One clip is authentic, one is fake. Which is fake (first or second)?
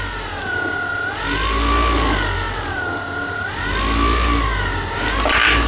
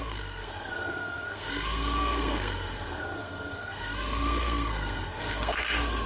second